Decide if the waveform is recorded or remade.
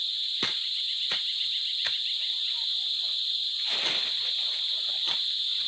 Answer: remade